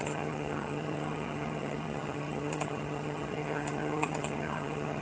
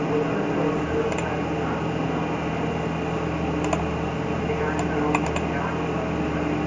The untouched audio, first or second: second